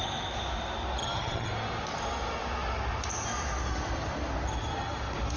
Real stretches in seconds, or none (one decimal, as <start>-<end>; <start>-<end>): 0.0-1.0; 1.5-5.4